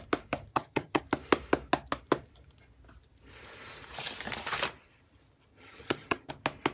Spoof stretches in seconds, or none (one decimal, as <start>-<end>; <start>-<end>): 0.5-1.0; 5.5-6.3